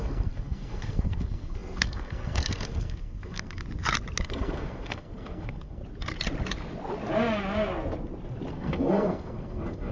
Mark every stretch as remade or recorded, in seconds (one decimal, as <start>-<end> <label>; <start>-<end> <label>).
0.0-3.6 remade; 3.6-4.2 recorded; 4.2-5.8 remade; 5.8-8.5 recorded; 8.5-9.9 remade